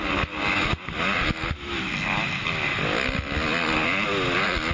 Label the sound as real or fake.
real